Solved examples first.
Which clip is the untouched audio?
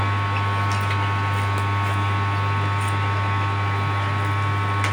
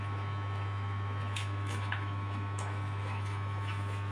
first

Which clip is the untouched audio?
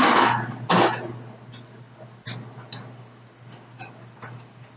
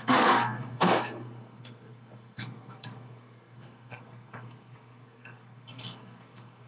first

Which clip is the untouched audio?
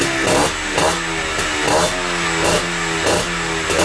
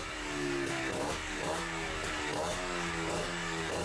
first